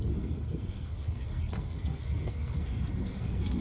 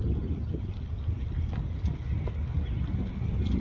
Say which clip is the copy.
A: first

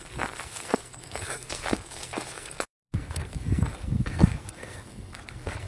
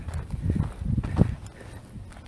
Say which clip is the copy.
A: first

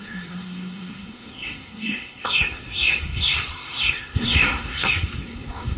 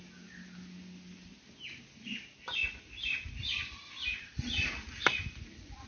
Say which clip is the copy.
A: first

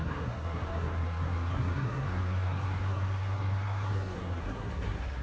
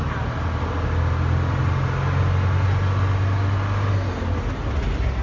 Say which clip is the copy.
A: first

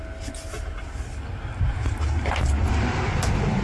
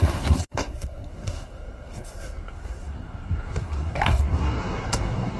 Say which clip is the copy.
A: second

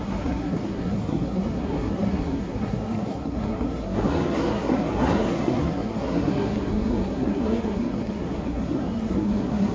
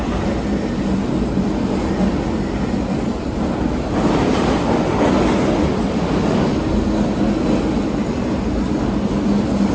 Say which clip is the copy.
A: first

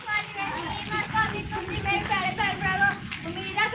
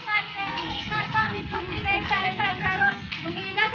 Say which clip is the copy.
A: second